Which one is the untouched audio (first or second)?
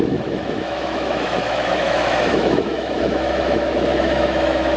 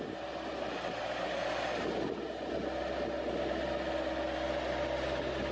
second